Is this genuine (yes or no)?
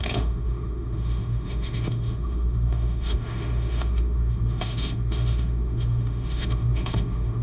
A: no